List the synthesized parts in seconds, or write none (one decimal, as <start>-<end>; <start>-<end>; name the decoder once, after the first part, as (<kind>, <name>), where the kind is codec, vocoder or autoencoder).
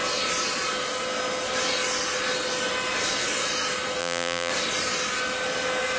4.0-4.5 (vocoder, BigVGAN v2)